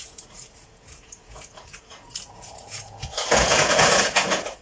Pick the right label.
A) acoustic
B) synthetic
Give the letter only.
B